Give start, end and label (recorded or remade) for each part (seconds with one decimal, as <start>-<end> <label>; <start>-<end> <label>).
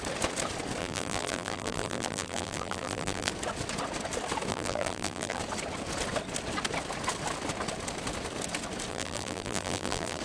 0.0-0.8 recorded; 0.8-3.3 remade; 3.3-4.5 recorded; 4.5-5.4 remade; 5.4-8.9 recorded; 8.9-10.2 remade